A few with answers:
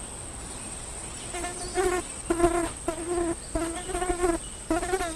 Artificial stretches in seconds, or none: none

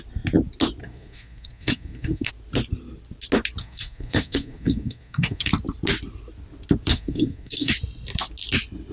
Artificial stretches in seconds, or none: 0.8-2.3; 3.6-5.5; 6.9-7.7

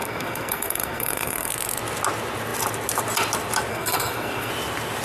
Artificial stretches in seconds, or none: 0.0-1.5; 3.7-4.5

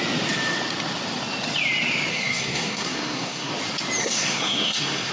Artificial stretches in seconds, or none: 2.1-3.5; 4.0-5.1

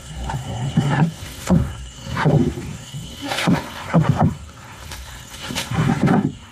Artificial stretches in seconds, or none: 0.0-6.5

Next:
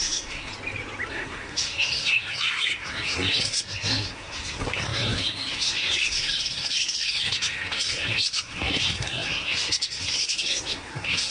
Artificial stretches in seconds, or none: 0.0-0.5; 1.1-11.3